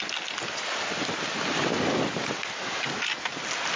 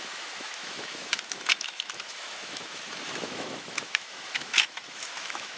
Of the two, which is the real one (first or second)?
first